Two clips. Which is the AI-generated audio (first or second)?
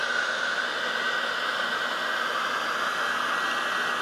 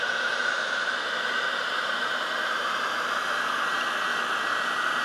second